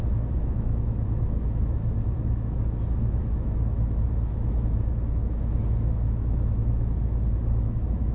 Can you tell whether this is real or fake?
fake